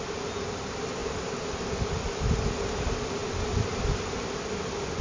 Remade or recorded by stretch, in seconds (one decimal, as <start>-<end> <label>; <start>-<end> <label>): 0.0-5.0 recorded